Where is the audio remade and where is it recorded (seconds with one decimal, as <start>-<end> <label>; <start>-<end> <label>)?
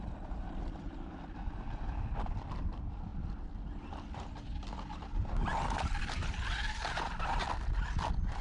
0.0-8.4 recorded